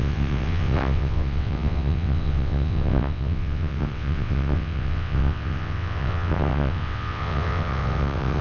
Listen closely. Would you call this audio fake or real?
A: fake